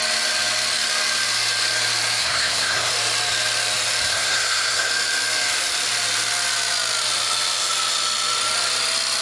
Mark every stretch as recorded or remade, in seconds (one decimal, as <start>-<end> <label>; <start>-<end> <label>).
0.0-2.2 recorded; 2.2-2.9 remade; 2.9-4.1 recorded; 4.1-4.9 remade; 4.9-9.2 recorded